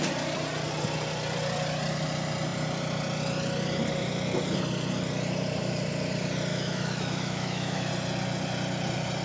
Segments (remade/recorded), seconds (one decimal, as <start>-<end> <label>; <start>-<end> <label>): 0.0-6.5 recorded; 6.5-7.9 remade; 7.9-9.2 recorded